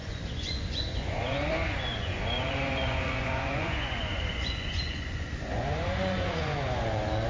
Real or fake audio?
fake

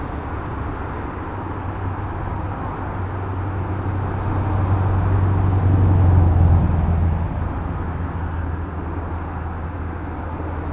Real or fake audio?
real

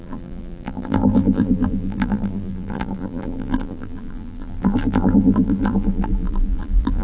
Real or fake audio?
fake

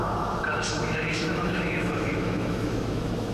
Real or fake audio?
fake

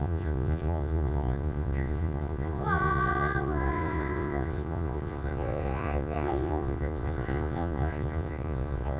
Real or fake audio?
fake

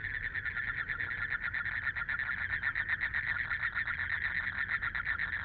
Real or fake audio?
real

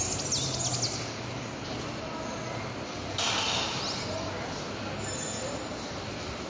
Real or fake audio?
real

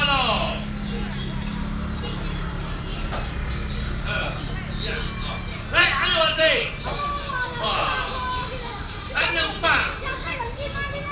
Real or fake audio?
real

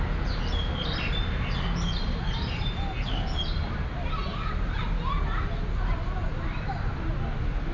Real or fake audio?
real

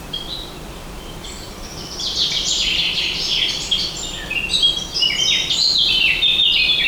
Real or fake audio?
fake